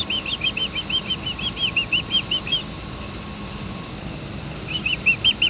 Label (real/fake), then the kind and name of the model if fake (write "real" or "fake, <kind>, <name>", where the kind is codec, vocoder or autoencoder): real